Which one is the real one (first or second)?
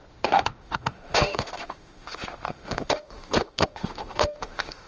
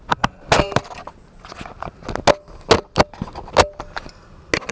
second